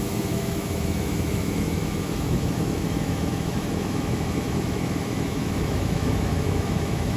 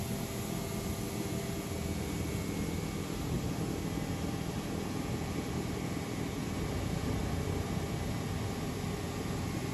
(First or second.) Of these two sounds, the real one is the second